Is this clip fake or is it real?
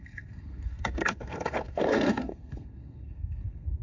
fake